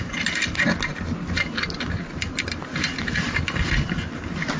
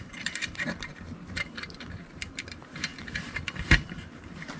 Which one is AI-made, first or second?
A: second